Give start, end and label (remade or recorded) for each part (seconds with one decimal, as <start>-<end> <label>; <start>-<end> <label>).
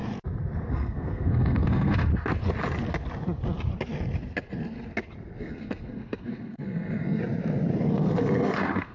0.0-0.7 recorded; 0.7-2.1 remade; 2.1-5.4 recorded; 5.4-7.2 remade; 7.2-7.9 recorded; 7.9-8.9 remade